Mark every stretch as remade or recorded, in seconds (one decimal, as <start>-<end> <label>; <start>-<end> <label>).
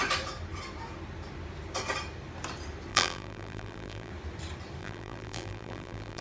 0.0-2.9 recorded; 2.9-4.1 remade; 4.1-4.8 recorded; 4.8-6.2 remade